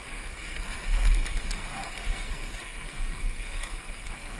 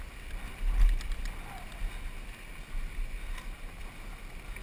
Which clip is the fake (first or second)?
first